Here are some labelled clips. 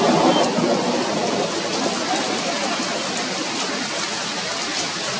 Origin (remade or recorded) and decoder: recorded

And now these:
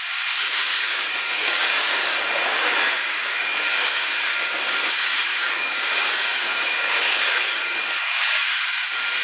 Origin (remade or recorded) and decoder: remade, codec, DAC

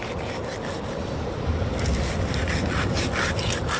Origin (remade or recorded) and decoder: recorded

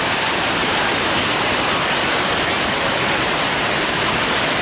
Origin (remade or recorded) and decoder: recorded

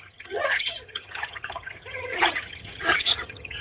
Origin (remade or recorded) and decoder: remade, vocoder, HiFi-GAN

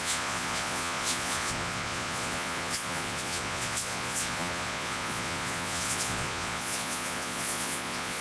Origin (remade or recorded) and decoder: remade, vocoder, Vocos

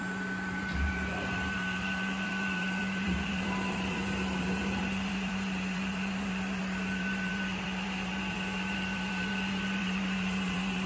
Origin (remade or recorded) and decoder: remade, vocoder, BigVGAN v2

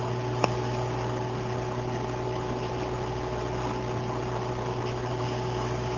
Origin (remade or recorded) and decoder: recorded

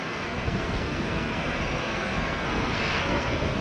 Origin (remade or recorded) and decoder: remade, codec, SNAC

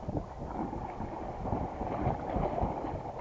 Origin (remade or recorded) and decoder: recorded